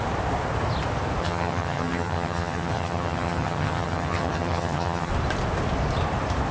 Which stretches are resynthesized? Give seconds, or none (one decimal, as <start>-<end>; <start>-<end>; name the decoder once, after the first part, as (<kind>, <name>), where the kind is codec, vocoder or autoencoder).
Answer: 1.2-5.1 (vocoder, HiFi-GAN)